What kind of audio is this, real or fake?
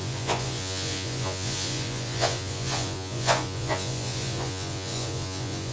fake